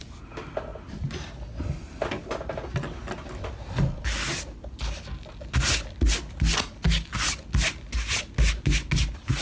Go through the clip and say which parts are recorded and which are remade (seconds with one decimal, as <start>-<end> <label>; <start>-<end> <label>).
0.0-9.4 recorded